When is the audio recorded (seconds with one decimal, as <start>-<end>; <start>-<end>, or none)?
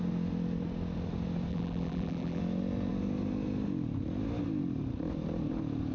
0.0-1.5; 2.4-5.9